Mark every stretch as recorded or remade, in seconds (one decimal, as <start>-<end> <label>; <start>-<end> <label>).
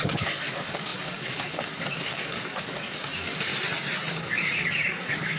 0.0-3.5 remade; 3.5-4.1 recorded; 4.1-5.4 remade